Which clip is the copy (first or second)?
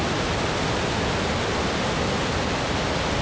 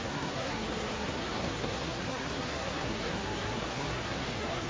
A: second